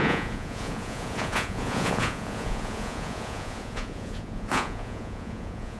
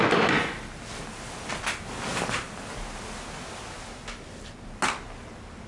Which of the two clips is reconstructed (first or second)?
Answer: first